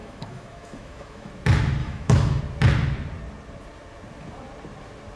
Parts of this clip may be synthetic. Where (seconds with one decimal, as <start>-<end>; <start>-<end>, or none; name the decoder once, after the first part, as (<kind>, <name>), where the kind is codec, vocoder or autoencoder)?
0.0-1.3 (autoencoder, DAC-VAE); 1.8-2.4